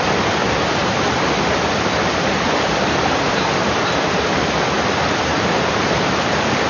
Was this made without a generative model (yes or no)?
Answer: no